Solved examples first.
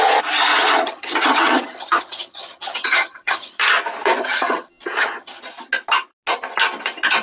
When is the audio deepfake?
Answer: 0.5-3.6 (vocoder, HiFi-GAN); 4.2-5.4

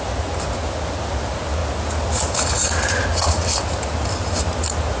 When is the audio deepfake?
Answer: none

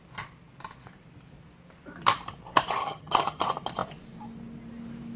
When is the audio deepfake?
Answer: 2.8-3.4 (vocoder, HiFi-GAN)

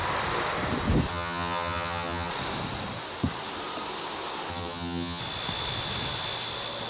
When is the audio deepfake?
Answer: 1.1-2.3 (vocoder, HiFi-GAN); 4.5-5.2